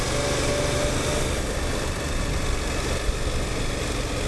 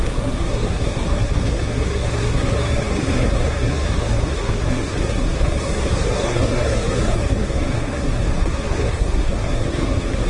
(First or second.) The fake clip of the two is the second